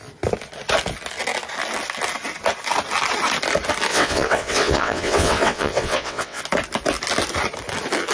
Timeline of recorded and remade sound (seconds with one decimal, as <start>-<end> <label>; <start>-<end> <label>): 0.0-3.9 recorded; 3.9-6.4 remade; 6.4-8.1 recorded